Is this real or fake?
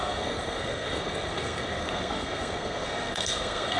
fake